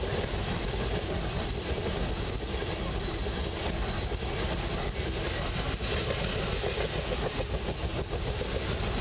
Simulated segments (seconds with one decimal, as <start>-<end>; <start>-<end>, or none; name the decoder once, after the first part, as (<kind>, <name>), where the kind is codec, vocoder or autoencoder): none